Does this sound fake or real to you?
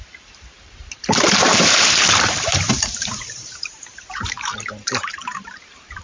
fake